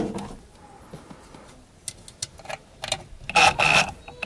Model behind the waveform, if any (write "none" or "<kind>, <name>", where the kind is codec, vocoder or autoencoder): none